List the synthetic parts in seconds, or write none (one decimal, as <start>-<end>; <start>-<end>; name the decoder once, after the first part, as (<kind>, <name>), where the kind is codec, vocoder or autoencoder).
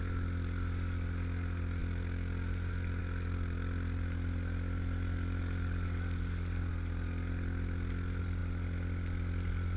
none